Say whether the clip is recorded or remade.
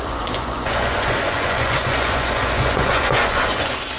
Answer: remade